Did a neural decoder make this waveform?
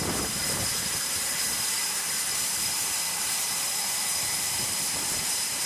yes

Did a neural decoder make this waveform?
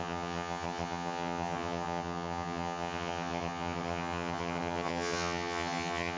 yes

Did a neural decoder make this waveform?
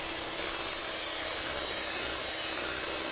no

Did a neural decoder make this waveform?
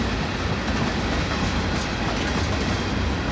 no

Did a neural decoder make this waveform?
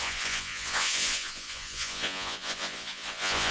yes